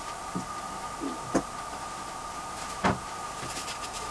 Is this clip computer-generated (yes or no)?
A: no